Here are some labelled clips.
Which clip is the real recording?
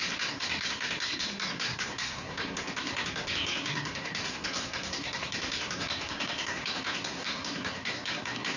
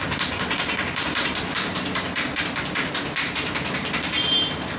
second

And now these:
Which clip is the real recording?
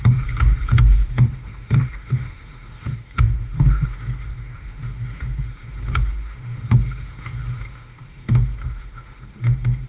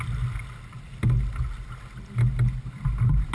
second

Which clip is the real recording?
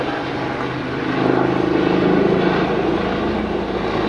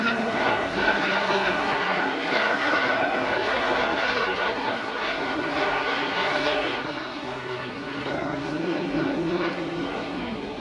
first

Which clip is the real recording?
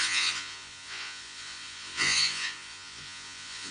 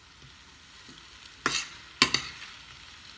second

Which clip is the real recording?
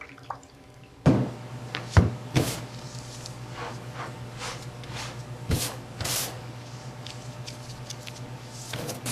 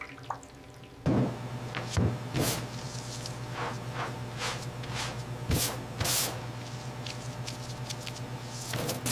second